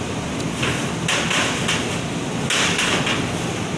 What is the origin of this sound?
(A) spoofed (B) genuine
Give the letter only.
B